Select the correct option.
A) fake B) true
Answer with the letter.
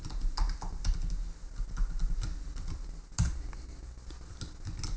B